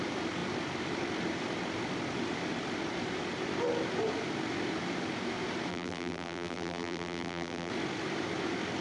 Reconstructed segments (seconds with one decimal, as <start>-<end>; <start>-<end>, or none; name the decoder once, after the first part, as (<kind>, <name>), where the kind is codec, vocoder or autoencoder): 5.7-7.7 (vocoder, BigVGAN v2)